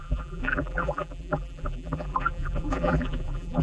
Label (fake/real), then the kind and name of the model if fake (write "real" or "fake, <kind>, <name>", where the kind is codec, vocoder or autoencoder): fake, vocoder, BigVGAN v2